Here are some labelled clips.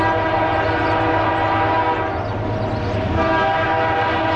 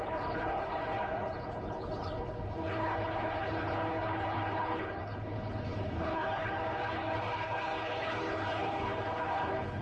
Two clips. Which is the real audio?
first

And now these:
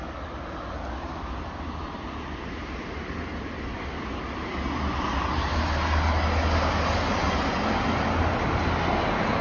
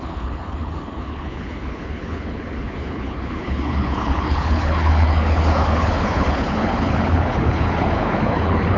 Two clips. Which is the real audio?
first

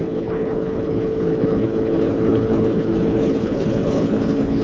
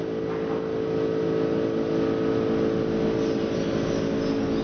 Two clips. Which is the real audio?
second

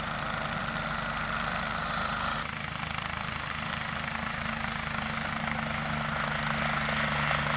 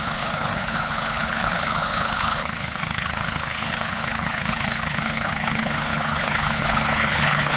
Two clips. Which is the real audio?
first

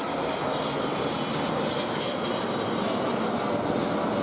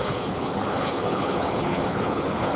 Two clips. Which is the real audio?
first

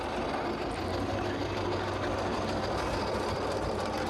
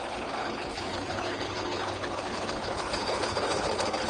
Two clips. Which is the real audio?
first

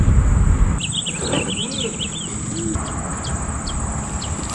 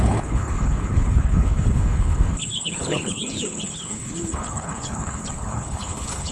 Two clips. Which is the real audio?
first